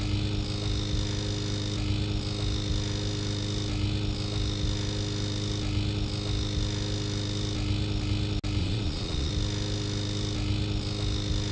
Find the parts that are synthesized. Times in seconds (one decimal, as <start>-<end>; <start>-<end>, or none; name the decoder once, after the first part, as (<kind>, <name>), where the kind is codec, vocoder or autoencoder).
8.6-9.3 (vocoder, Vocos)